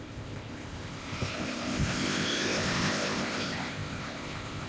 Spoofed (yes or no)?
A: yes